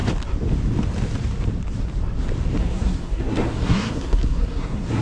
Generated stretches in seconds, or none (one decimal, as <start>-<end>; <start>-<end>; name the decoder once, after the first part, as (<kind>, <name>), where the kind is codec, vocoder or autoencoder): 2.6-5.0 (codec, SNAC)